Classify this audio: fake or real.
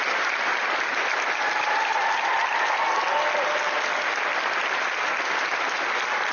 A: real